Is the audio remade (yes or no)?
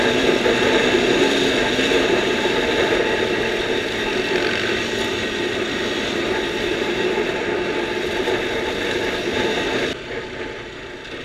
no